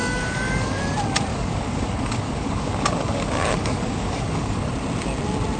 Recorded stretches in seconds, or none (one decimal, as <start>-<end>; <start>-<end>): 0.8-1.3; 4.7-5.6